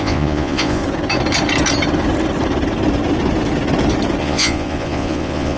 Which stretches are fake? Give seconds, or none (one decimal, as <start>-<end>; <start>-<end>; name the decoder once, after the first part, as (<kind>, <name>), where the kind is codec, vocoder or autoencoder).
0.0-0.8 (vocoder, Vocos); 4.2-5.6